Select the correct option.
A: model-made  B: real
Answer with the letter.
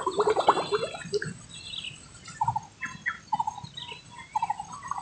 B